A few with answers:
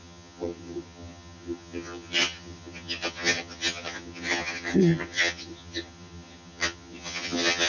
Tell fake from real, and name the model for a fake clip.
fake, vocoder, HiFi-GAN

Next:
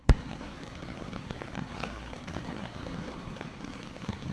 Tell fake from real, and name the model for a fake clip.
fake, codec, SNAC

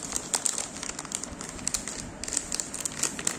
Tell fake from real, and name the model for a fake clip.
real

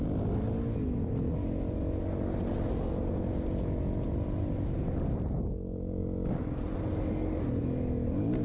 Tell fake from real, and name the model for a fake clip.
real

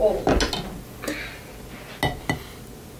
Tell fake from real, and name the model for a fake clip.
real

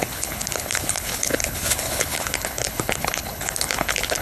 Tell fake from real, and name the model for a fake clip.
fake, codec, HILCodec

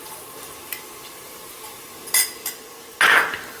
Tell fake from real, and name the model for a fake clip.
real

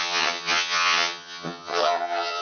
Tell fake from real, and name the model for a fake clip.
fake, vocoder, HiFi-GAN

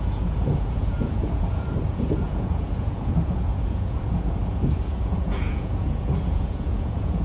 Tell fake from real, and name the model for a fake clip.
fake, vocoder, Vocos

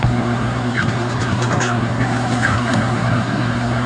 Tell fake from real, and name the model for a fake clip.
fake, codec, SNAC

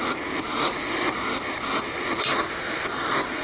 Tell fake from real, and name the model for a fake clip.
real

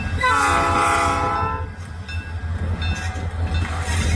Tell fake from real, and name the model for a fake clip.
real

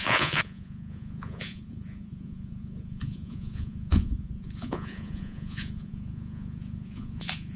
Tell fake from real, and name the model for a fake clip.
fake, vocoder, Vocos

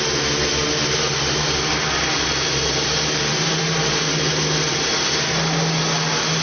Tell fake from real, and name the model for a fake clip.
real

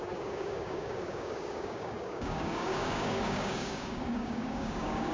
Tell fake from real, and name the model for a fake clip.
fake, codec, DAC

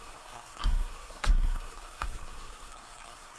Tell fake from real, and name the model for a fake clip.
fake, codec, SNAC